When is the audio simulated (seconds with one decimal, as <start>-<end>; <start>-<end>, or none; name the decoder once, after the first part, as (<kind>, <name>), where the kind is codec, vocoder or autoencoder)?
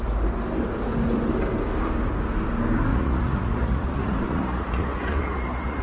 2.9-5.8 (vocoder, Vocos)